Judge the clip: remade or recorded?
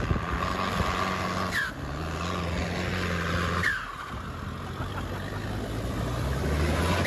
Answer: recorded